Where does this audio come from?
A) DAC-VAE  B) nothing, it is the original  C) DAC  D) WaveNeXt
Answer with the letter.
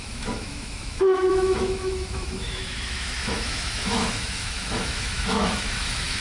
A